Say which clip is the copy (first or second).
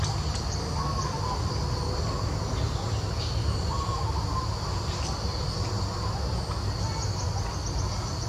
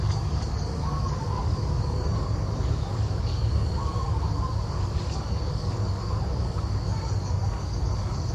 second